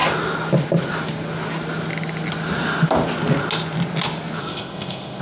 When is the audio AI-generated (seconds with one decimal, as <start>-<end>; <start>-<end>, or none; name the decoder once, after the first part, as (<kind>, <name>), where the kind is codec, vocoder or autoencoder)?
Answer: 4.4-5.2 (codec, ZipCodec)